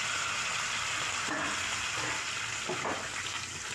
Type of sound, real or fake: real